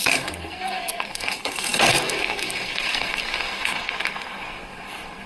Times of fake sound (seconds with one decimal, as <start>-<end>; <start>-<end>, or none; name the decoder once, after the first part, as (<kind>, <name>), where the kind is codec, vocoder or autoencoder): 0.0-5.3 (codec, SNAC)

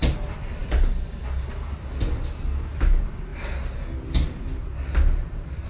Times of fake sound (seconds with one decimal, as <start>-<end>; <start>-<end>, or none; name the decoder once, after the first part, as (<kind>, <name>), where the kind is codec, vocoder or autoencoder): none

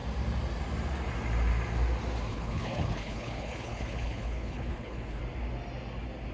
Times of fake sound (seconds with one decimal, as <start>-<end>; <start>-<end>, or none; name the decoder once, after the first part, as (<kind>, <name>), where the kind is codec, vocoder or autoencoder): 2.3-5.2 (codec, HILCodec)

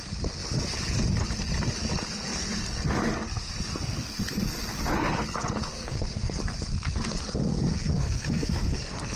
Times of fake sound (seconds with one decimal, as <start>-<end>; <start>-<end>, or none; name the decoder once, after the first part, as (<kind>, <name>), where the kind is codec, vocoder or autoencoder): 5.7-6.4 (codec, SNAC); 7.9-9.2

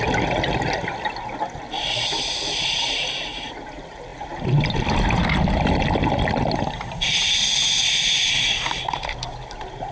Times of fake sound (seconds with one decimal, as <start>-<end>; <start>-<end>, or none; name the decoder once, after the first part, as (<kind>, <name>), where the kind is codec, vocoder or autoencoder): none

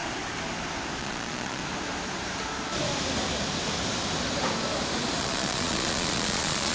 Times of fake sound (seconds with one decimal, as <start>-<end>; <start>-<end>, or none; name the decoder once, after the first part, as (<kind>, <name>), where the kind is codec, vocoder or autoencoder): 1.0-1.6 (vocoder, Vocos); 5.2-6.7

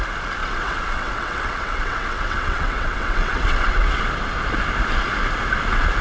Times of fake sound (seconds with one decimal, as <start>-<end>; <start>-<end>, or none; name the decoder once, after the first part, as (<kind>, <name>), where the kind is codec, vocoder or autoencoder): 0.4-4.0 (vocoder, WaveNeXt)